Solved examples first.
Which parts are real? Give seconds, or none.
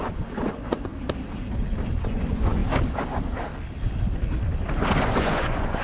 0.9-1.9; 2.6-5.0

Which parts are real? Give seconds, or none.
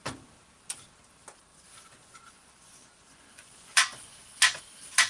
0.0-1.5; 4.6-5.1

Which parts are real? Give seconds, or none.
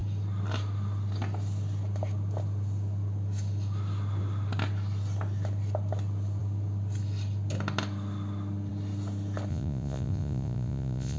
0.0-9.5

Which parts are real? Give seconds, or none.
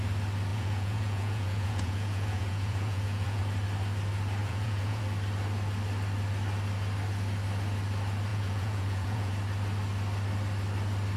0.0-0.5; 3.4-4.4; 5.0-8.3; 9.3-11.2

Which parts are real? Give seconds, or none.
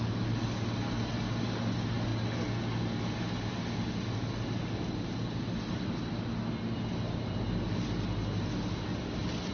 0.0-9.5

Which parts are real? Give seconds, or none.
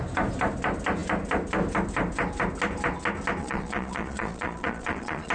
0.0-3.4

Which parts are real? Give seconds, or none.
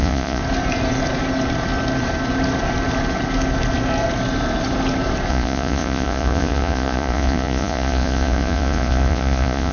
0.4-5.3